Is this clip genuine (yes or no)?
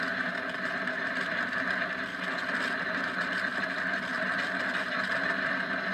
yes